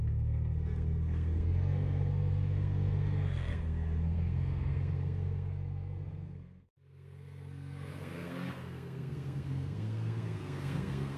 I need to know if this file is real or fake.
fake